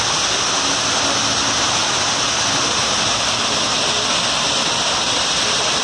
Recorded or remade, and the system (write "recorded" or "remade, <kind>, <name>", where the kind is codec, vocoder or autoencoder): recorded